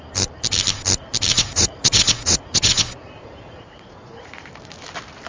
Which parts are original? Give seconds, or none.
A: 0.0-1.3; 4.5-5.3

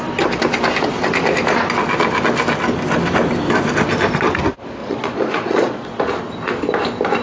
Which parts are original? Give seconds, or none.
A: 0.0-4.8; 6.0-7.2

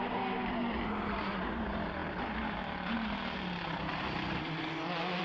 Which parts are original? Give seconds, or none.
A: 0.0-5.2

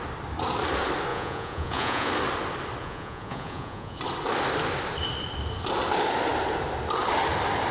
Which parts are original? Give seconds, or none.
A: 0.0-1.1; 2.1-2.8; 4.0-7.7

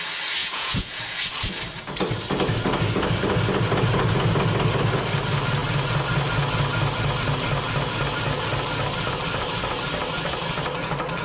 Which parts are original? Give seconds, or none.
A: 0.0-0.4; 1.0-11.2